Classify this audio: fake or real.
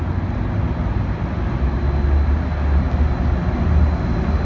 real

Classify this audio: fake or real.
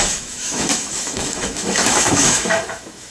fake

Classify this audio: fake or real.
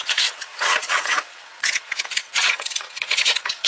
fake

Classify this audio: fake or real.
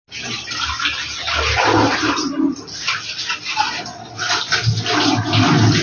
real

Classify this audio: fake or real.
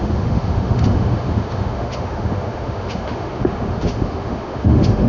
fake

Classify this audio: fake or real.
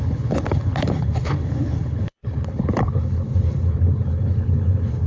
fake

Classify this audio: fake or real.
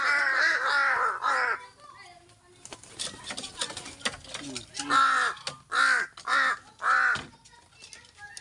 real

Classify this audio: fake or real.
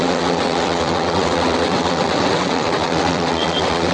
fake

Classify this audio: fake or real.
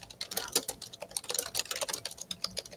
real